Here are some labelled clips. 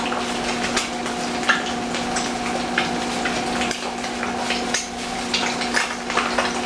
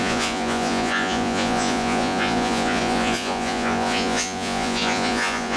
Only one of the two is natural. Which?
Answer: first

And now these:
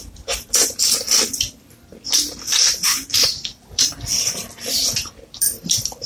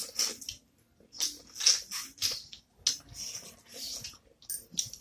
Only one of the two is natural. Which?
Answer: second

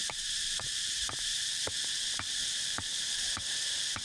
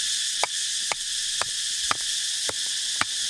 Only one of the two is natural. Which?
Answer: second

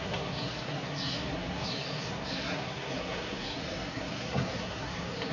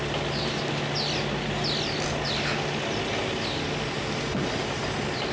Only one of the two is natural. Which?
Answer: second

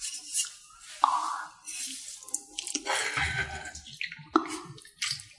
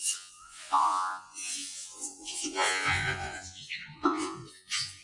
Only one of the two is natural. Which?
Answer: first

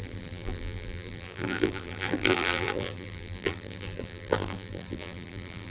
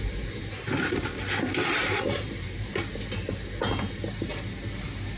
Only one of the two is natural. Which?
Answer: second